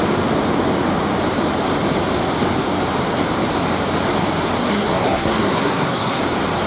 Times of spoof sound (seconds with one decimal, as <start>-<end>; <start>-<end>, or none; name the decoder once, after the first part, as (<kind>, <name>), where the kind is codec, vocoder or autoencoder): 4.6-6.2 (codec, SNAC)